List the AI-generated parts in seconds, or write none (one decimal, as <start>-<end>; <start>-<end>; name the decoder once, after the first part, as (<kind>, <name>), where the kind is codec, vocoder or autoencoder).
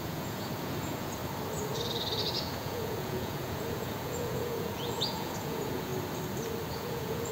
0.0-1.2 (vocoder, Vocos); 2.3-5.9; 6.7-7.3